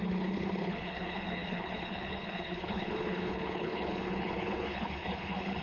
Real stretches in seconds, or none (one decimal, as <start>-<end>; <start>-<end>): none